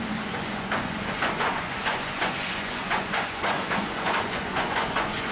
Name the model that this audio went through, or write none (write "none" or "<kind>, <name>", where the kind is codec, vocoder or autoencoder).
vocoder, Vocos